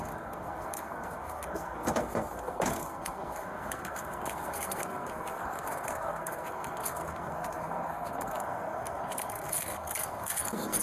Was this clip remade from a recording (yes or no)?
yes